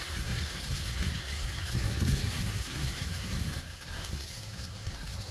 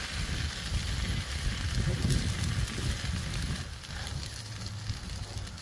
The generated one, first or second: first